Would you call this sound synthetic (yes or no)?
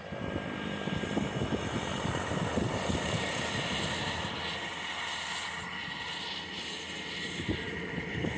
no